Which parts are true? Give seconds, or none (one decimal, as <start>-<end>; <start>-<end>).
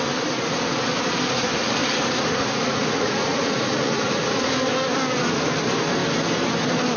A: 0.0-1.8; 4.5-7.0